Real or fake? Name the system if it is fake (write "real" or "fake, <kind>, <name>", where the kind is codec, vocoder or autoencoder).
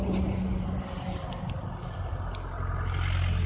real